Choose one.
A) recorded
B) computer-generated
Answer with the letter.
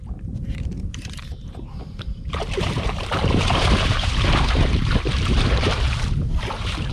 B